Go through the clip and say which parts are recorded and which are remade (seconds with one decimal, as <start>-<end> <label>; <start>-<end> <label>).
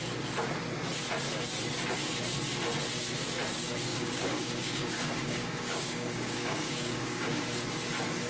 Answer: 0.0-3.9 recorded; 3.9-7.4 remade; 7.4-8.3 recorded